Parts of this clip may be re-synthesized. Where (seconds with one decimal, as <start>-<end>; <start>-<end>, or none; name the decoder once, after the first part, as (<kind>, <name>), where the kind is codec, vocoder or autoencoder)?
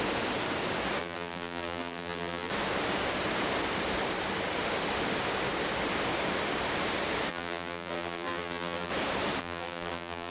1.0-2.5 (vocoder, BigVGAN v2); 7.3-8.9; 9.4-10.3